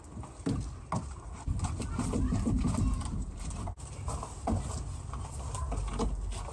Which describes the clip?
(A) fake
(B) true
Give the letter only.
B